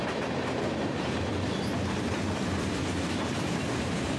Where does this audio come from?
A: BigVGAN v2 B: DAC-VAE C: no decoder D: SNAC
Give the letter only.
A